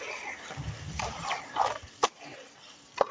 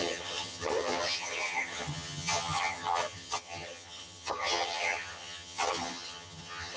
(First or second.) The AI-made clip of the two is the second